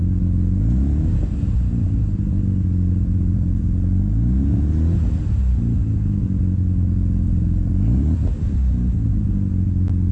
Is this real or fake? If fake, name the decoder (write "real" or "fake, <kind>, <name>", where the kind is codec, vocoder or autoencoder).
real